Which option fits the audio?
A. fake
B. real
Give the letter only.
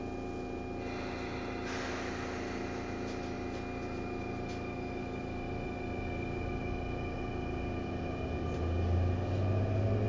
B